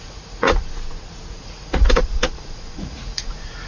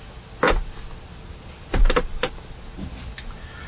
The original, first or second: second